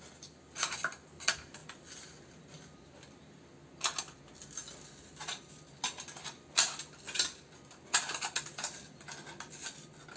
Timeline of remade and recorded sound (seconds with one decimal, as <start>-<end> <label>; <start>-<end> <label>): 0.0-10.2 recorded